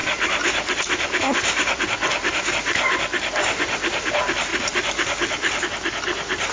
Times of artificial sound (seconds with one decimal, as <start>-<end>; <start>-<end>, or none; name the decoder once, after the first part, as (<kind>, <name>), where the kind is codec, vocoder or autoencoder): 0.0-2.5 (vocoder, BigVGAN v2); 4.5-5.6